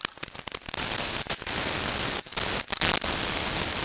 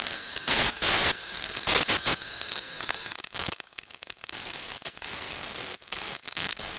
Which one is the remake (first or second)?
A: second